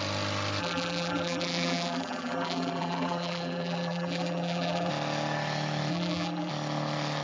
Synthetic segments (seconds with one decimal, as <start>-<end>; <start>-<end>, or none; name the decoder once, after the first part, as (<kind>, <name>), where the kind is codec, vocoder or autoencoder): 0.6-4.9 (vocoder, BigVGAN v2); 5.9-6.5